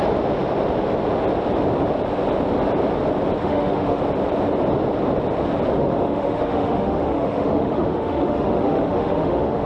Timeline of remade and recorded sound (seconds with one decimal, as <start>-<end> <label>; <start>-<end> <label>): 0.0-3.4 recorded; 3.4-4.0 remade; 4.0-5.8 recorded; 5.8-9.7 remade